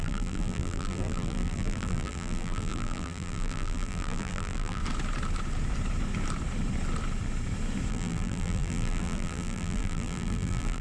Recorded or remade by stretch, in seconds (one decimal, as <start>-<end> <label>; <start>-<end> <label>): 0.0-4.8 remade; 4.8-7.9 recorded; 7.9-10.8 remade